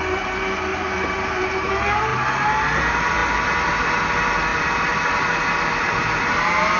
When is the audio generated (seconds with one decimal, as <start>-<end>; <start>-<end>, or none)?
0.7-1.7; 3.2-3.9; 4.5-6.8